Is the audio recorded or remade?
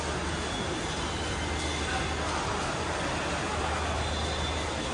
recorded